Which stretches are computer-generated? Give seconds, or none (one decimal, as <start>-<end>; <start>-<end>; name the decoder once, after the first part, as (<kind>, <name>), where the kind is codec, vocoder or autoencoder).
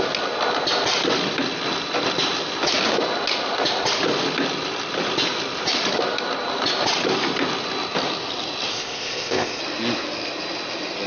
8.7-9.6 (codec, ZipCodec)